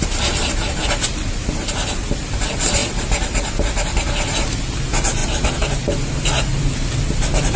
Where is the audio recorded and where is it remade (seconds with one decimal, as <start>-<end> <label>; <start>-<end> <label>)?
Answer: 0.0-7.6 recorded